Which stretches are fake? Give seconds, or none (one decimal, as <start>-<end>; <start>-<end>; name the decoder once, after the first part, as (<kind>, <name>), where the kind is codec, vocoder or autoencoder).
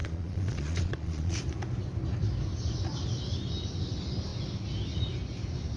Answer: 0.0-1.4 (vocoder, Vocos)